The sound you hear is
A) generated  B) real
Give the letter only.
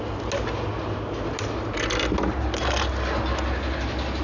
B